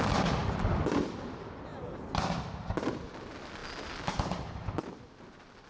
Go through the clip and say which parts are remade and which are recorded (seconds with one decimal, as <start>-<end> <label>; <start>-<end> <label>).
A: 0.0-0.4 recorded; 0.4-0.9 remade; 0.9-3.6 recorded; 3.6-4.6 remade; 4.6-5.7 recorded